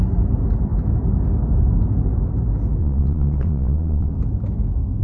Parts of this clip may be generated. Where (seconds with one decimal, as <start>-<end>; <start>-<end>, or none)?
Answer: 2.8-4.1